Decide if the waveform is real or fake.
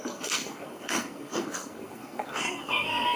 fake